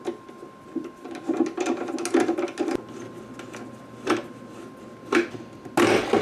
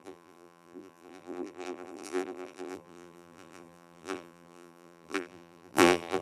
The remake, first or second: second